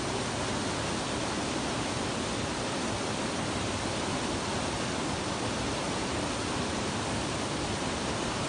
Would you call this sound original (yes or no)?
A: yes